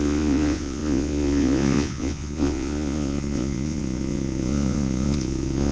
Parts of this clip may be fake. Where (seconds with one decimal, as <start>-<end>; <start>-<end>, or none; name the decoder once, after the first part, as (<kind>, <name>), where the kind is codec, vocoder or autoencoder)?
0.0-5.7 (vocoder, Vocos)